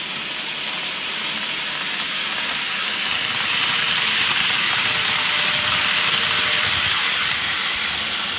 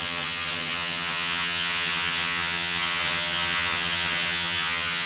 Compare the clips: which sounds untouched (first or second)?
first